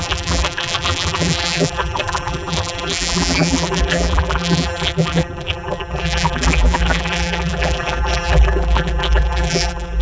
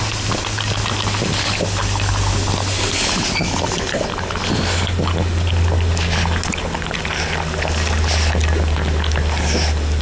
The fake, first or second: first